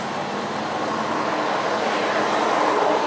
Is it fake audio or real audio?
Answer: real